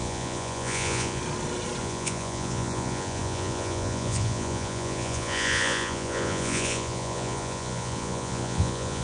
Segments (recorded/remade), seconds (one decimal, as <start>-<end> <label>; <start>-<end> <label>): 0.0-1.2 remade; 1.2-1.8 recorded; 1.8-9.0 remade